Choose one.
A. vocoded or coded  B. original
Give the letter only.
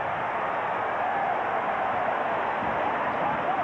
B